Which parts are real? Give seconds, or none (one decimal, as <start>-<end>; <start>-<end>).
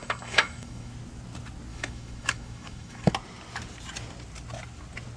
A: 0.9-1.7; 3.1-5.2